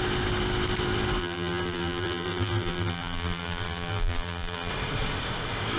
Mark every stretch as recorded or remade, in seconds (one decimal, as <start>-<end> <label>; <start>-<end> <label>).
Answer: 0.0-1.2 recorded; 1.2-4.7 remade; 4.7-5.8 recorded